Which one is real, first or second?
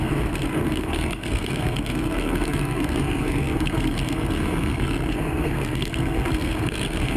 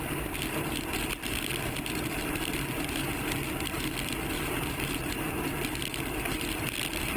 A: second